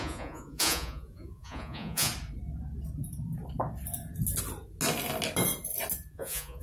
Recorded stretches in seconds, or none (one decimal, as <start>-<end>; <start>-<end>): 2.1-6.1